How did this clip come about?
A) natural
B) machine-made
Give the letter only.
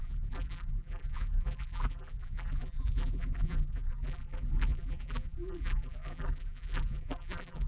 B